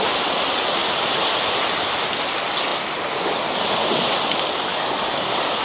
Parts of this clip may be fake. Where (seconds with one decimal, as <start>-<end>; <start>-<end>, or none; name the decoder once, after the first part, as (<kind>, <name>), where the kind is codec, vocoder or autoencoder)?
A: 4.7-5.6 (codec, DAC)